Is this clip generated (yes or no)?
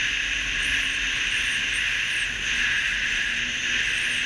no